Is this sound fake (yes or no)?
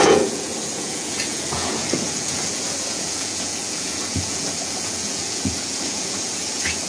yes